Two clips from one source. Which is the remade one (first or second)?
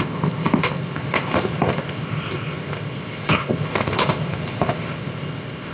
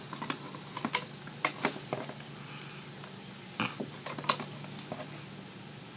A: first